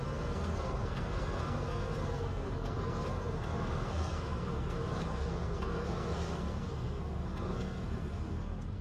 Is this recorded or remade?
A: remade